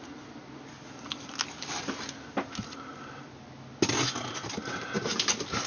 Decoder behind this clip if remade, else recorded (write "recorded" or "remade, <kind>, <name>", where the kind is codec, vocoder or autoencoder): recorded